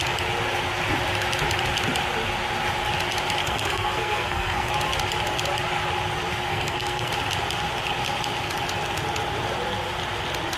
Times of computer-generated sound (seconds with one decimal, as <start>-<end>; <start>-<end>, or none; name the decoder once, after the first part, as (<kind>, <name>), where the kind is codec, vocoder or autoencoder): 3.4-4.7 (codec, SNAC); 6.5-7.1